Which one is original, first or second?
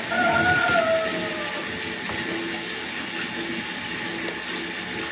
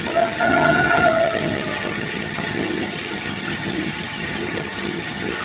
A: first